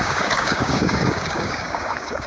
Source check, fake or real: fake